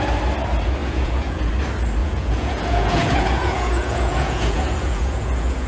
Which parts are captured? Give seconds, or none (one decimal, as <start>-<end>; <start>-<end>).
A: 0.0-0.8; 1.5-2.0